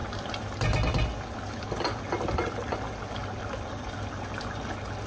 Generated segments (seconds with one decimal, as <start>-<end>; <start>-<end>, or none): none